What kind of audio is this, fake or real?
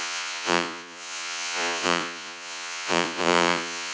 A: fake